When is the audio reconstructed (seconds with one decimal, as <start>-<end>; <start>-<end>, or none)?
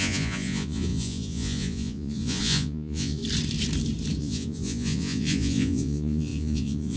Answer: 0.0-3.2; 4.2-7.0